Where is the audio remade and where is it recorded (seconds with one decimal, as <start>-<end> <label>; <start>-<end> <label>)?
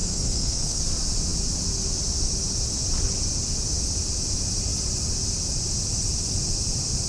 0.0-0.8 remade; 0.8-7.1 recorded